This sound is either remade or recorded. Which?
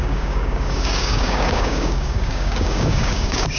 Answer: remade